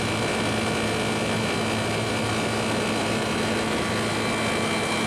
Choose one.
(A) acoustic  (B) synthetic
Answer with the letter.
A